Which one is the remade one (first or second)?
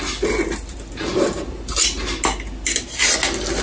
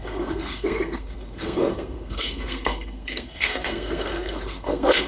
second